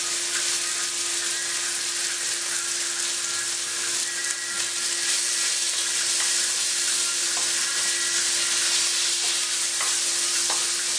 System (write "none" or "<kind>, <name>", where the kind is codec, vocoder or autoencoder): none